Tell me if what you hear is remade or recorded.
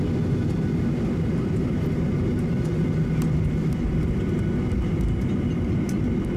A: recorded